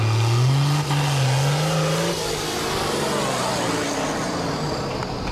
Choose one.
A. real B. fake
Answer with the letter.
A